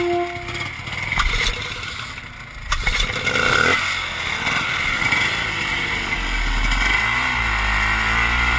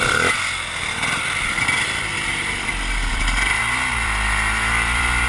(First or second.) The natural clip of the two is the first